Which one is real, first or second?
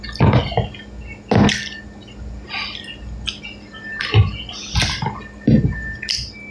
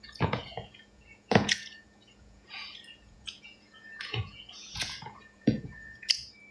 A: first